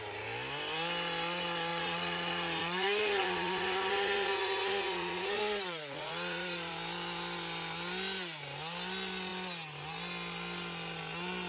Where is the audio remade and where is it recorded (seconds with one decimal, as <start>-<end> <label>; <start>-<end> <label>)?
0.0-1.7 recorded; 1.7-6.7 remade; 6.7-11.5 recorded